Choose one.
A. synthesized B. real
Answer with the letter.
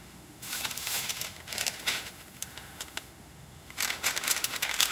A